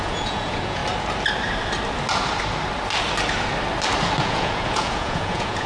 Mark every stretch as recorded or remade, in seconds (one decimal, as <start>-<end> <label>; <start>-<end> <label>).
0.0-0.8 remade; 0.8-4.2 recorded; 4.2-5.7 remade

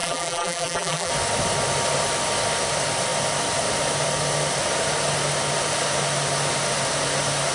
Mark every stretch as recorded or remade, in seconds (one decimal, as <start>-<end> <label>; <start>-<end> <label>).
0.0-1.1 remade; 1.1-7.5 recorded

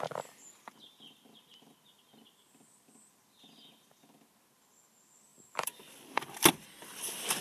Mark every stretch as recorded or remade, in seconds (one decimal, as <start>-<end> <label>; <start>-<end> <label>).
0.0-5.3 recorded; 5.3-6.5 remade; 6.5-7.4 recorded